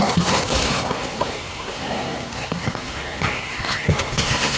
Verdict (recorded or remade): remade